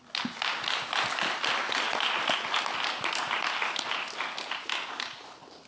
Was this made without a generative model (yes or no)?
yes